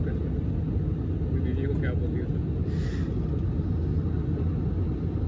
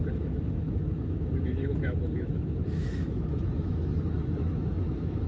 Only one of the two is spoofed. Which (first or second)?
second